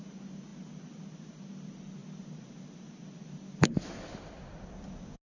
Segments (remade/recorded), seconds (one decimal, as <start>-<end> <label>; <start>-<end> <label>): 0.0-5.4 recorded